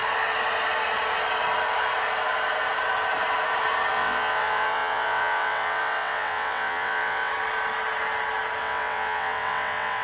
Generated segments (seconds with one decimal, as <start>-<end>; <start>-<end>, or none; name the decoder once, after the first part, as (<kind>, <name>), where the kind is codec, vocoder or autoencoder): 3.9-7.3 (vocoder, WaveNeXt); 8.6-10.0